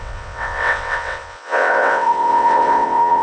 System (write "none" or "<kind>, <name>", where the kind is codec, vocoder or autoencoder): vocoder, WaveNeXt